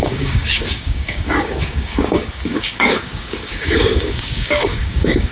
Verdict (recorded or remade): remade